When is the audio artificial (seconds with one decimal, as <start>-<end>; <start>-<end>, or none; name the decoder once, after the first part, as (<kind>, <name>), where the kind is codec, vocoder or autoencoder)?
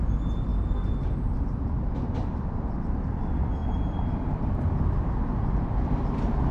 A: none